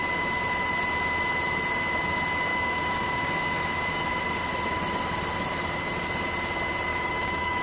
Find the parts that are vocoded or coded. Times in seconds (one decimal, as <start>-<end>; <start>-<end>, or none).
2.5-4.2; 6.9-7.6